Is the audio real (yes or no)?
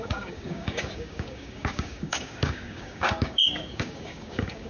no